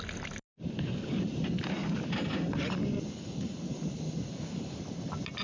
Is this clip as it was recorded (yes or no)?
yes